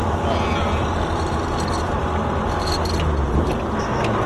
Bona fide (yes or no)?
yes